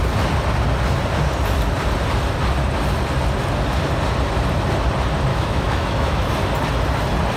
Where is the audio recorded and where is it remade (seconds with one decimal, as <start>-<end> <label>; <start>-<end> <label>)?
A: 0.0-5.3 recorded; 5.3-6.2 remade; 6.2-7.4 recorded